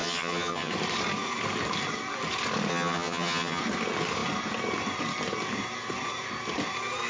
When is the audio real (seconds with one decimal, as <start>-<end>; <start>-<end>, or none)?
0.7-2.7; 3.6-7.1